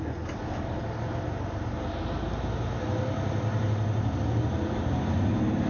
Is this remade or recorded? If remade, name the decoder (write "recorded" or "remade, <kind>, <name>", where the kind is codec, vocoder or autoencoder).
recorded